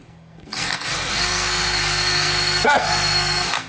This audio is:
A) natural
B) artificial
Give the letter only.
B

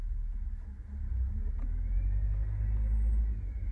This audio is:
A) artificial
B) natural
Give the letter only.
B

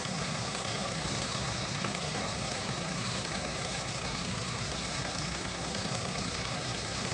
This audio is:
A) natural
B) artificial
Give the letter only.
B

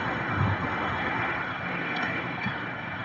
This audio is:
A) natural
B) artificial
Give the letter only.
B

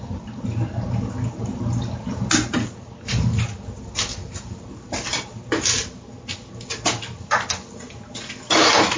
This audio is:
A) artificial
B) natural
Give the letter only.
B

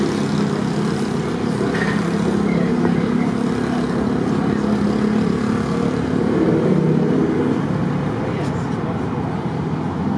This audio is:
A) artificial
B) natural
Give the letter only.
B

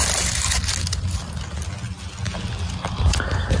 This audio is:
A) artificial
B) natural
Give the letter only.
B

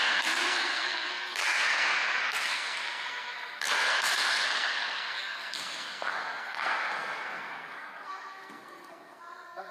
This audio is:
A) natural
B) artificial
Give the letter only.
B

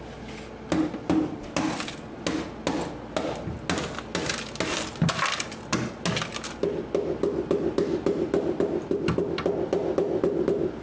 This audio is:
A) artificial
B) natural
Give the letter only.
B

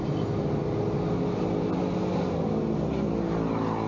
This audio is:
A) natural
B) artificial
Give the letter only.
A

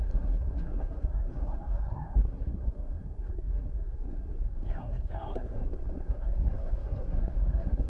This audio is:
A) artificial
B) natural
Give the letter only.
A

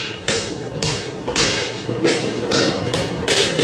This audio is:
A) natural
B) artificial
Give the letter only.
B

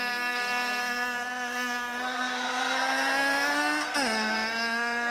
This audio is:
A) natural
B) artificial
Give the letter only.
B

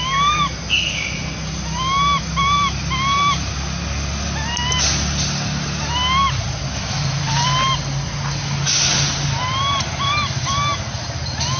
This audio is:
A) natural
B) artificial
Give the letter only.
A